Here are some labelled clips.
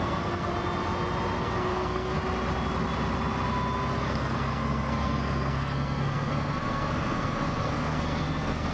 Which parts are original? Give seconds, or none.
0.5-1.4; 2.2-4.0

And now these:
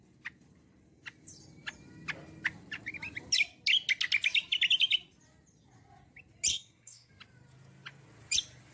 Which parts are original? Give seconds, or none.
0.0-6.5; 7.1-8.7

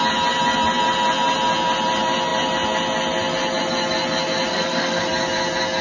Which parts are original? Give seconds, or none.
0.0-4.5; 5.0-5.8

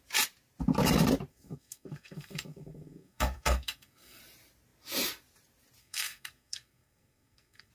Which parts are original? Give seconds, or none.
0.0-1.3; 4.2-5.8